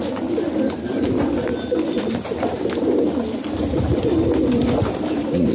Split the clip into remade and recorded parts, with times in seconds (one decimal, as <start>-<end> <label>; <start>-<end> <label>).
0.0-5.5 recorded